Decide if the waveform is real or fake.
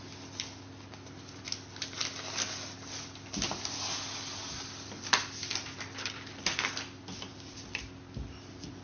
real